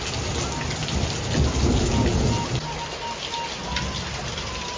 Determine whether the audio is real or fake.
real